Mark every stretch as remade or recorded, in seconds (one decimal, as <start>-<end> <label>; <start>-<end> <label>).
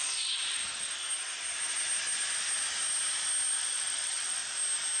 0.0-0.6 remade; 0.6-3.6 recorded; 3.6-4.4 remade; 4.4-5.0 recorded